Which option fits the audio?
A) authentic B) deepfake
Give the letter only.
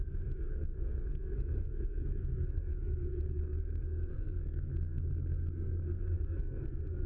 B